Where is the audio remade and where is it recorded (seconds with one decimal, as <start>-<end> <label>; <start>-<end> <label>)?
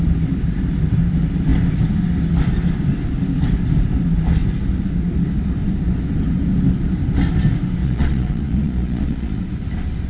0.0-7.8 recorded; 7.8-9.4 remade; 9.4-10.1 recorded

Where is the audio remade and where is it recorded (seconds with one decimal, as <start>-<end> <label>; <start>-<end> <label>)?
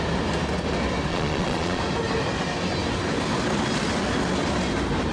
0.0-1.1 recorded; 1.1-1.8 remade; 1.8-5.1 recorded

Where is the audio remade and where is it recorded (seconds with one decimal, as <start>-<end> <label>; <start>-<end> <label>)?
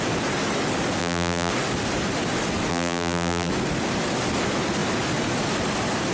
0.0-1.0 recorded; 1.0-1.5 remade; 1.5-2.7 recorded; 2.7-3.5 remade; 3.5-6.1 recorded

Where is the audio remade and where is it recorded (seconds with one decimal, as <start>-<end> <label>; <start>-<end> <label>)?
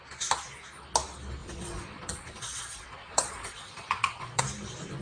0.0-1.4 recorded; 1.4-4.4 remade; 4.4-5.0 recorded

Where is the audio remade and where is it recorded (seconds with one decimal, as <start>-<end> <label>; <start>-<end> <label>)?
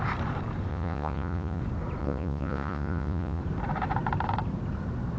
0.0-0.7 recorded; 0.7-1.6 remade; 1.6-2.0 recorded; 2.0-3.4 remade; 3.4-5.2 recorded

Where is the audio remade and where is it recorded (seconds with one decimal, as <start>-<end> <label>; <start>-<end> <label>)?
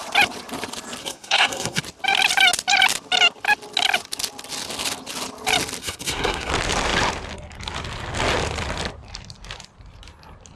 0.0-1.0 recorded; 1.0-1.8 remade; 1.8-5.8 recorded; 5.8-6.5 remade; 6.5-10.6 recorded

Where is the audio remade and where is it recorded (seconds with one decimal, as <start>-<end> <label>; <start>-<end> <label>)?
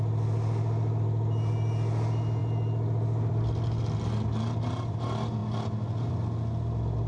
0.0-7.1 recorded